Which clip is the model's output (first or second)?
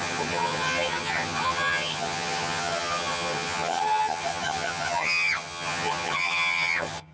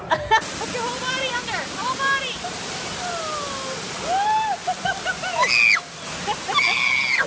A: first